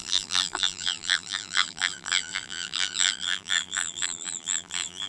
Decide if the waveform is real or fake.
fake